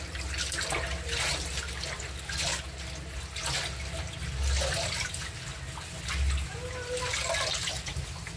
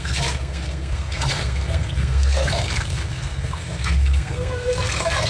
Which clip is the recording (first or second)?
first